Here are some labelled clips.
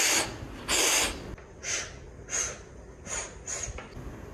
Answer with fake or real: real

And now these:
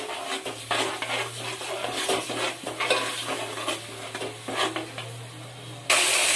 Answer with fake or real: real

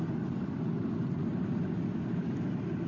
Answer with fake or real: real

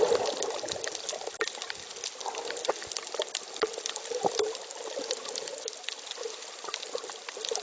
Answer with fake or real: real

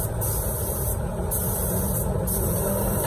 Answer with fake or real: fake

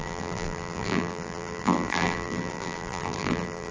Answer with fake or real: fake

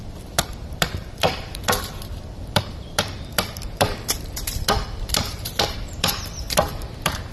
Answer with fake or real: fake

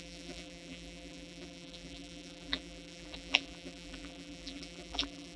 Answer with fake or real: fake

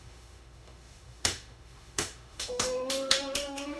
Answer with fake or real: fake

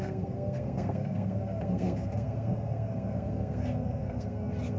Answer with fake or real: fake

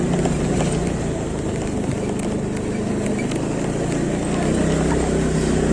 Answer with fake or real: real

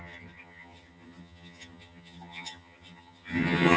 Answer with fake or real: fake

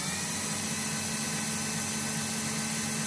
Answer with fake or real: real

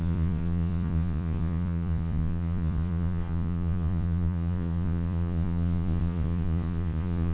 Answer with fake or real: fake